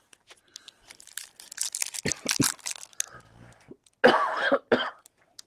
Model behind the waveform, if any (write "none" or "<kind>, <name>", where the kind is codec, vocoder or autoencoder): none